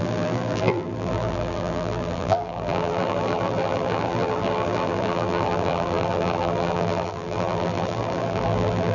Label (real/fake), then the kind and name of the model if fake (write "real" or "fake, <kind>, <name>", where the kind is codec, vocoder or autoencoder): fake, vocoder, BigVGAN v2